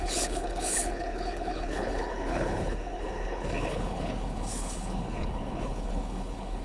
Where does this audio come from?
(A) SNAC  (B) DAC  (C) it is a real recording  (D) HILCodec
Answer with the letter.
D